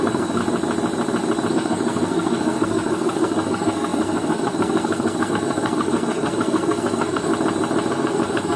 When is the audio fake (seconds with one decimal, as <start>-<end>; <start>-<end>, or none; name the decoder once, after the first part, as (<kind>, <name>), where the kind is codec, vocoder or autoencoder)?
0.0-0.4 (codec, SNAC); 1.5-7.3; 7.9-8.6